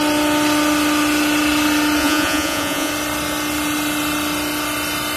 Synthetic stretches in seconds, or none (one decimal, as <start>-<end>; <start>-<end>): 2.0-2.9